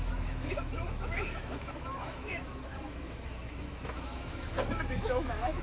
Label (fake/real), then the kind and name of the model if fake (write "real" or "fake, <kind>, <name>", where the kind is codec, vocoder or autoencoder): fake, autoencoder, DAC-VAE